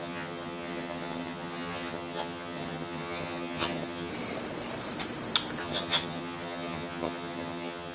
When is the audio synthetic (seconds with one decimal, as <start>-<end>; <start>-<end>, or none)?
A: 0.0-4.1; 5.6-7.9